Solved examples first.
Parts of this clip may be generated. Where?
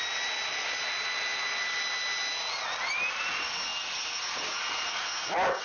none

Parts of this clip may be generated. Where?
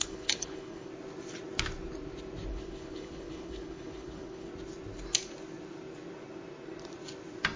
0.0-0.9 (codec, HILCodec); 2.5-4.5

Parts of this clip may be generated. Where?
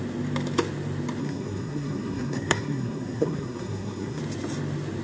1.2-4.2 (codec, SNAC)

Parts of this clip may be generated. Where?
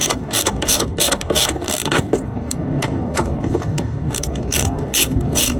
0.0-5.6 (codec, DAC)